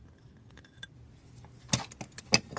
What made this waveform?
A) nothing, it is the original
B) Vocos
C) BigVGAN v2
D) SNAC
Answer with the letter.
A